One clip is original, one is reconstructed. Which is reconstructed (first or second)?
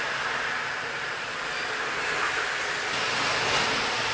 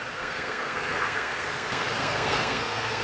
second